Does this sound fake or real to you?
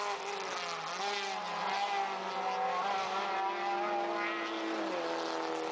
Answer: real